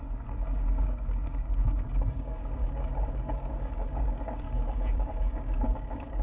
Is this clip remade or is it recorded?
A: remade